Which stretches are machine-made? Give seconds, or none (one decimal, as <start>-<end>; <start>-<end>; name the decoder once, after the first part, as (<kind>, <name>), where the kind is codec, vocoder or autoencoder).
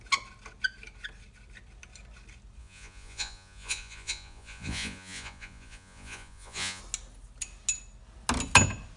2.6-6.8 (vocoder, Vocos)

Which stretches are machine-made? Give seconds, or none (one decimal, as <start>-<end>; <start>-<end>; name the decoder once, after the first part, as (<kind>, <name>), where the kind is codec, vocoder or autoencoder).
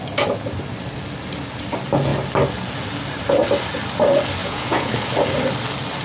4.4-4.9 (vocoder, Vocos)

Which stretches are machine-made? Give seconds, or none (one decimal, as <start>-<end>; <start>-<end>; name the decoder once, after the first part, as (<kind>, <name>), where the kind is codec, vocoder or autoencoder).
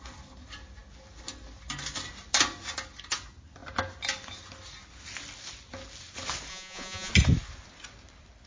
6.5-7.1 (vocoder, Vocos)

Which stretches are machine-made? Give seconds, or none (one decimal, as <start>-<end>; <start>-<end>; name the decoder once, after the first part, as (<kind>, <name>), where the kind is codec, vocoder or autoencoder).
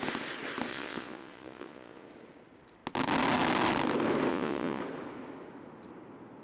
0.7-2.1 (vocoder, Vocos); 4.3-4.8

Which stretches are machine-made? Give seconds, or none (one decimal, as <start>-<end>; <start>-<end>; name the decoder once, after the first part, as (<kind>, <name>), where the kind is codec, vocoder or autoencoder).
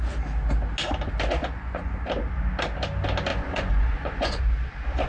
1.4-1.9 (vocoder, Vocos); 3.3-4.4